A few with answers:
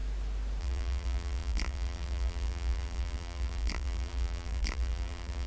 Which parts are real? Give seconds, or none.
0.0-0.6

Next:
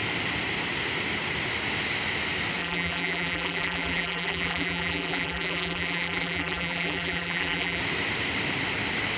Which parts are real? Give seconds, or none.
0.0-2.6; 7.8-9.2